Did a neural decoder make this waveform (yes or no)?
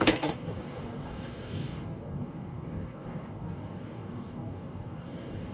yes